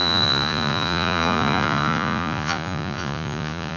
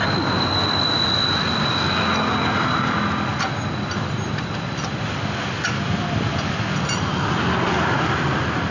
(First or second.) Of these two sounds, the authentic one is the second